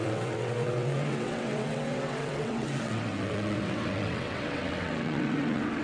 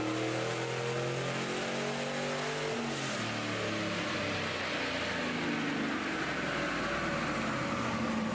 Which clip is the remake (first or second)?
first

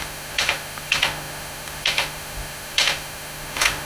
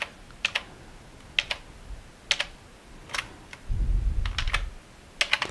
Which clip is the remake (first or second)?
first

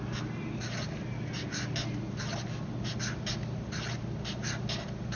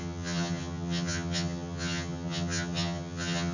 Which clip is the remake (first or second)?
second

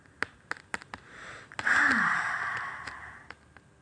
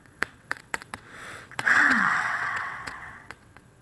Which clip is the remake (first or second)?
second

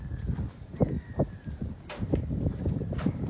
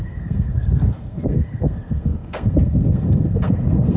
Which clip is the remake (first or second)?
second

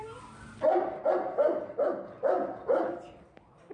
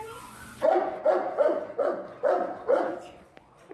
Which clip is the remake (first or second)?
second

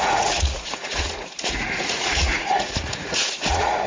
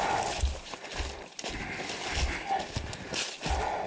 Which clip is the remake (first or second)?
first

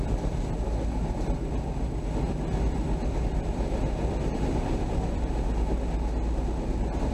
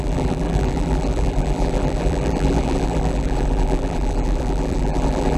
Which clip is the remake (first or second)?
second